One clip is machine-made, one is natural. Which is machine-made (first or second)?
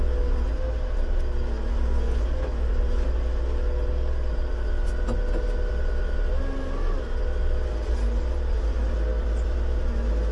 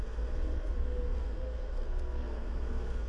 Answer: second